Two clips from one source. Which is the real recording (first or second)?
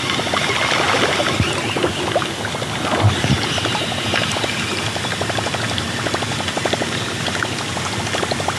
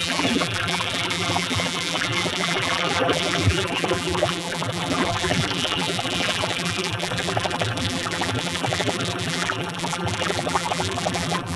first